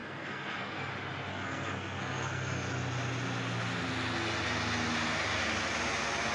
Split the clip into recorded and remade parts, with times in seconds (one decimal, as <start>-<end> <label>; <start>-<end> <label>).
0.0-0.9 remade; 0.9-1.3 recorded; 1.3-2.7 remade; 2.7-6.3 recorded